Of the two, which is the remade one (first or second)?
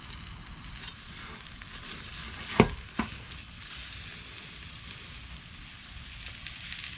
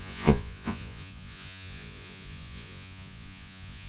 second